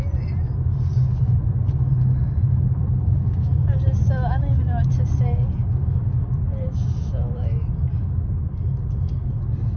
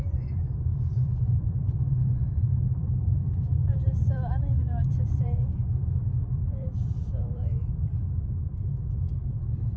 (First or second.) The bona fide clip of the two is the first